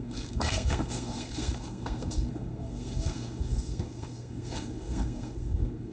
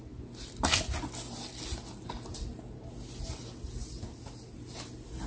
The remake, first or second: first